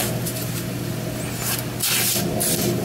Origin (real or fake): real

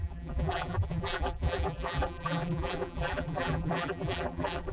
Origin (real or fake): fake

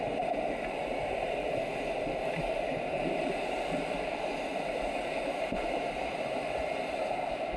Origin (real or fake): fake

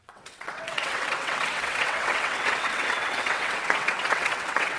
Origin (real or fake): fake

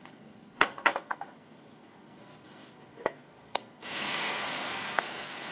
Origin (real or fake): fake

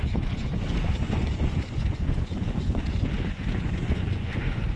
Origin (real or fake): fake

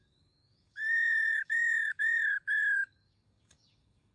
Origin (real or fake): fake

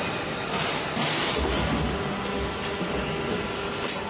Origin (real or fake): real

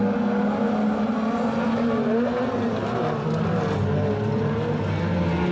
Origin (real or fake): real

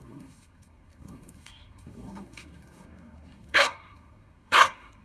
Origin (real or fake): fake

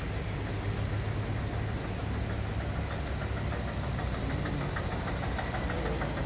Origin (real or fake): real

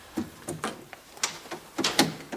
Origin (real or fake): real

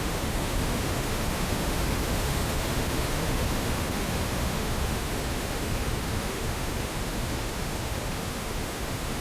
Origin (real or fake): fake